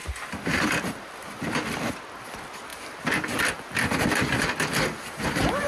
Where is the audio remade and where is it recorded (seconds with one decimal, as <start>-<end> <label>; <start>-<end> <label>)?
0.0-5.7 recorded